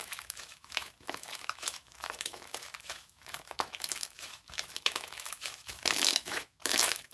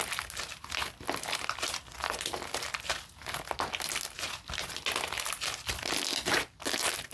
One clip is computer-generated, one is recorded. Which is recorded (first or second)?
second